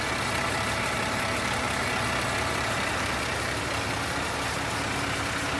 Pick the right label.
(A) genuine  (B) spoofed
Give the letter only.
A